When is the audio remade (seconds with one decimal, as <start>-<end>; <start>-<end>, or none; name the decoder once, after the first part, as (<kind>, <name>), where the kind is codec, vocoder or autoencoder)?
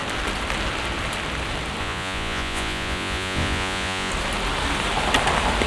1.8-4.1 (vocoder, Vocos)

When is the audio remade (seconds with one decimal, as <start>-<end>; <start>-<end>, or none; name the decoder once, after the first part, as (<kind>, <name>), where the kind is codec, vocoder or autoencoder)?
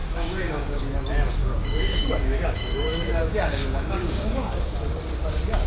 0.0-0.8 (codec, DAC); 1.4-4.5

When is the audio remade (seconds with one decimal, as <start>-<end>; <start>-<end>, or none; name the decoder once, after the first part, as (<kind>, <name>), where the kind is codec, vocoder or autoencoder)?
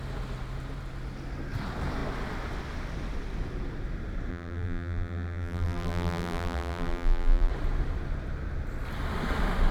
4.3-7.5 (vocoder, BigVGAN v2)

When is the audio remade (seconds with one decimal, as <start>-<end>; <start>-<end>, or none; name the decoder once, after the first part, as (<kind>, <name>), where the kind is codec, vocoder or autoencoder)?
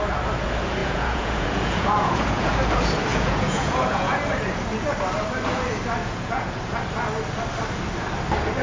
0.8-2.5 (vocoder, Vocos); 3.1-4.2; 6.0-6.6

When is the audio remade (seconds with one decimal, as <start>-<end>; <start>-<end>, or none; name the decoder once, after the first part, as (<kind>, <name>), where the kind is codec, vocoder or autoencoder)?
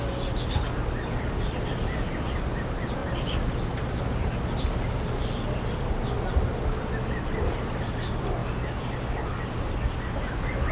none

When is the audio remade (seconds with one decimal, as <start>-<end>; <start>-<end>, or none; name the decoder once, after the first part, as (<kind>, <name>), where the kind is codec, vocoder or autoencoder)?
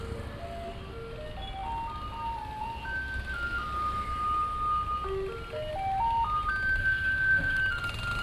6.8-7.6 (codec, SNAC)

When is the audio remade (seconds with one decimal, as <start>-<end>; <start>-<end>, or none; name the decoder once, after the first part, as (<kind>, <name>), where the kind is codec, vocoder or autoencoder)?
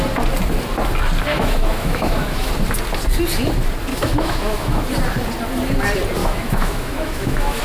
1.3-2.5 (autoencoder, DAC-VAE); 3.9-4.8; 6.2-7.6